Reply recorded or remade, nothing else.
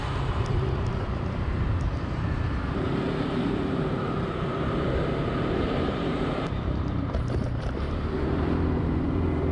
remade